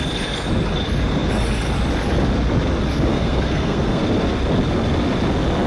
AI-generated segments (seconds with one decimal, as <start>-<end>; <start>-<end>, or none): 3.1-4.0